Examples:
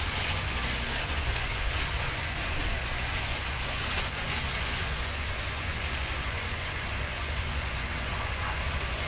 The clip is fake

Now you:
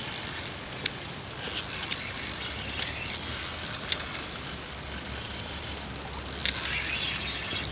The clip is real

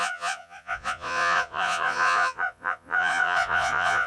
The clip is fake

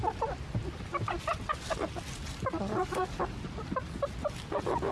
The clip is real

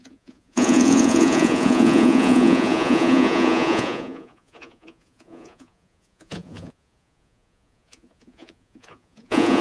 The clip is fake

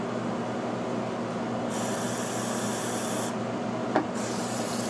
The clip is real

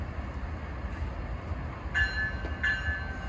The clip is real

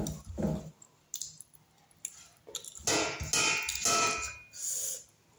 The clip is real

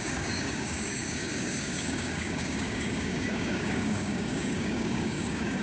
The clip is fake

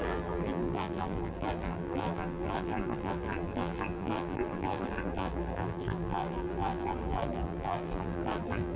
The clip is fake